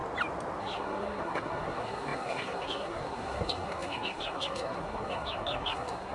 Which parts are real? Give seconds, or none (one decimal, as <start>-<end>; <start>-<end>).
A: 0.0-0.6